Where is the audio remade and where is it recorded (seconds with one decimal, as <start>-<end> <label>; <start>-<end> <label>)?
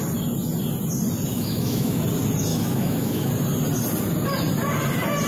0.0-1.3 recorded; 1.3-2.0 remade; 2.0-2.5 recorded; 2.5-3.3 remade; 3.3-5.3 recorded